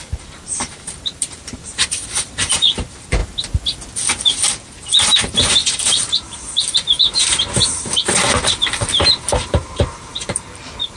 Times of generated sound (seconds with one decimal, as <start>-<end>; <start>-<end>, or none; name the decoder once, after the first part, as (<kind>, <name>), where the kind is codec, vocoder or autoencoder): 0.0-3.2 (vocoder, BigVGAN v2); 4.1-11.0